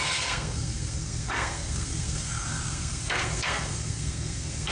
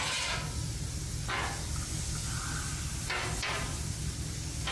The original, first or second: second